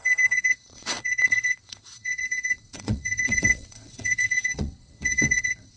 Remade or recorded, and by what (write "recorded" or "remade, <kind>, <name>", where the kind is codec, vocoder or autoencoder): remade, vocoder, WaveNeXt